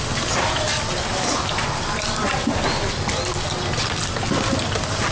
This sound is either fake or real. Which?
real